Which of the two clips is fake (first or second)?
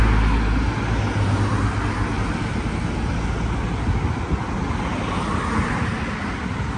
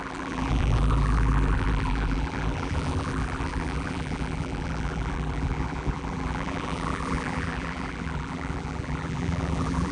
second